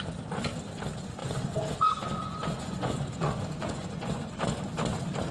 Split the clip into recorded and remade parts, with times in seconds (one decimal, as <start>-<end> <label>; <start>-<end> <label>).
0.0-1.2 recorded; 1.2-4.4 remade; 4.4-5.3 recorded